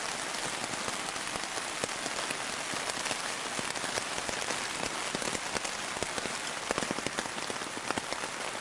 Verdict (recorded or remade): recorded